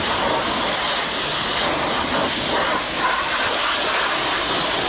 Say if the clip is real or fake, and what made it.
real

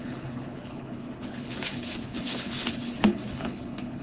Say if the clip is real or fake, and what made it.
fake, codec, HILCodec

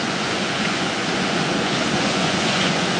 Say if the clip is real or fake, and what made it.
fake, vocoder, Vocos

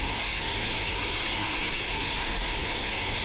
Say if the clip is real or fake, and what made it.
fake, codec, SNAC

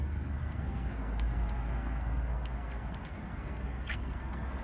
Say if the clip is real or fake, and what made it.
fake, codec, SNAC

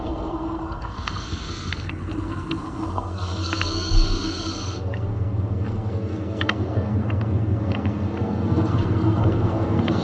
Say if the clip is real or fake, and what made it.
fake, codec, SNAC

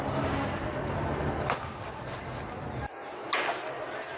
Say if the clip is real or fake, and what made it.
real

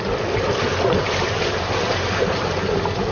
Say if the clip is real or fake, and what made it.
real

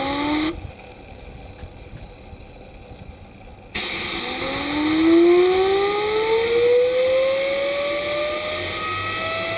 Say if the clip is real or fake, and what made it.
real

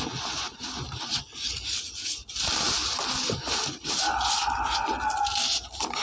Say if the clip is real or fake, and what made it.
real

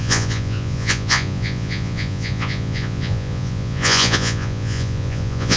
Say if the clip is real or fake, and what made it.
fake, vocoder, Vocos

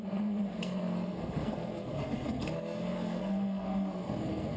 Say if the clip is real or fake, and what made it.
fake, codec, SNAC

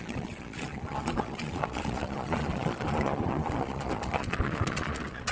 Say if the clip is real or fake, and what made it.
fake, vocoder, Vocos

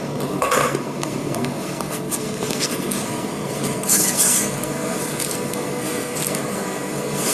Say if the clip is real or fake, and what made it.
fake, codec, SNAC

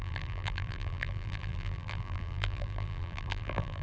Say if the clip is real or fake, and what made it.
fake, vocoder, BigVGAN v2